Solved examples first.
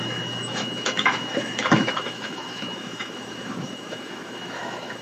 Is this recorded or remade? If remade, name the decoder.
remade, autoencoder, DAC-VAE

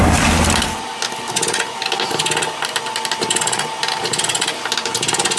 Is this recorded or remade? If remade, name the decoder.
recorded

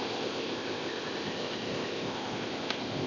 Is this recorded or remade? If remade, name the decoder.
remade, codec, ZipCodec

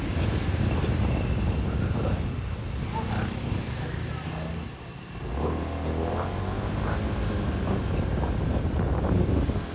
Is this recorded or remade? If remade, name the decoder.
recorded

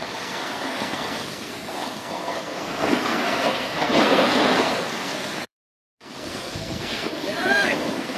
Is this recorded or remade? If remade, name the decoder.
remade, codec, SNAC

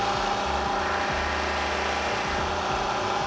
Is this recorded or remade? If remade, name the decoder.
recorded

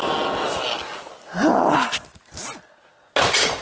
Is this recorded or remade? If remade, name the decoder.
recorded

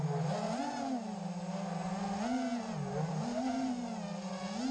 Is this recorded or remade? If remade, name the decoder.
recorded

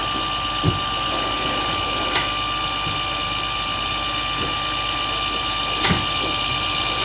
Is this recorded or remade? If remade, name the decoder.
recorded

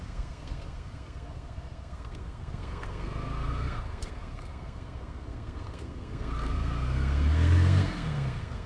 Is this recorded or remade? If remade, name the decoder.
remade, codec, SNAC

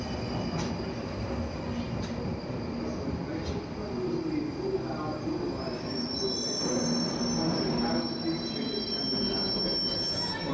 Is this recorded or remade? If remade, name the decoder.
recorded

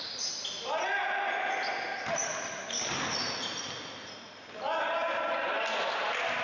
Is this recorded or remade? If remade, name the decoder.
recorded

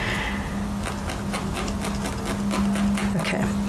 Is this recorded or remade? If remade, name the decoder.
recorded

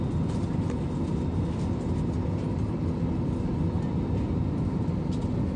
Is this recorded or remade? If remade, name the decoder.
recorded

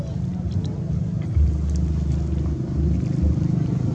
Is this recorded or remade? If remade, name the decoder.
recorded